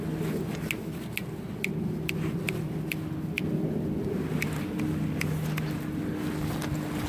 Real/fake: real